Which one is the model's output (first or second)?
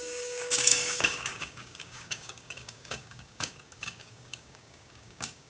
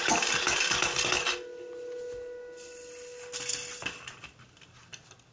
first